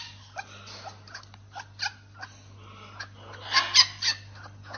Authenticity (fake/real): real